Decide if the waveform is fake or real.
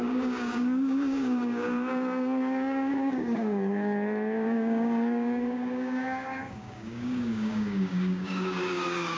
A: fake